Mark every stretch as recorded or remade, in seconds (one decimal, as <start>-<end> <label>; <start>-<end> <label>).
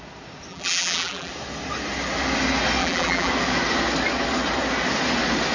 0.0-0.5 recorded; 0.5-1.3 remade; 1.3-2.8 recorded; 2.8-3.3 remade; 3.3-5.5 recorded